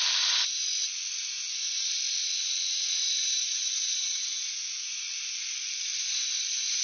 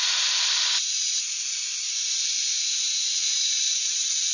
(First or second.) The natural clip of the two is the first